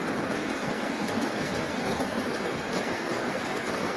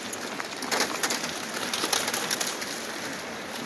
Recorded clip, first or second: second